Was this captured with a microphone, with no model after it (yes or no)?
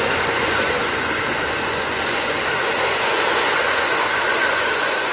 no